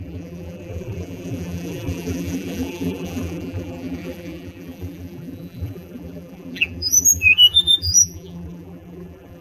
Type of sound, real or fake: fake